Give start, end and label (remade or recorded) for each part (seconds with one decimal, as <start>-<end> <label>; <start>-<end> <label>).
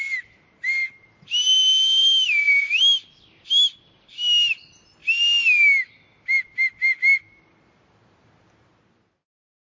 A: 0.0-9.7 recorded